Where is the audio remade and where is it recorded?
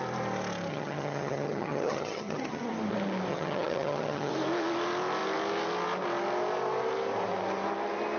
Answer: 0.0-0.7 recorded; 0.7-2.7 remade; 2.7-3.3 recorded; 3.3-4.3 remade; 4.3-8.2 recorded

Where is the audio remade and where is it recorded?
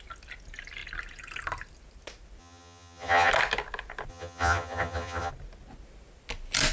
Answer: 0.0-2.4 recorded; 2.4-3.3 remade; 3.3-4.1 recorded; 4.1-5.3 remade; 5.3-6.7 recorded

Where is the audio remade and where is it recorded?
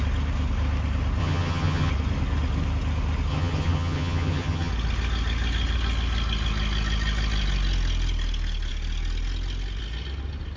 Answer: 0.0-1.2 recorded; 1.2-1.9 remade; 1.9-3.3 recorded; 3.3-4.7 remade; 4.7-10.6 recorded